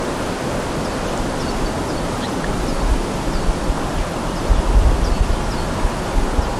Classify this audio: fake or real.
real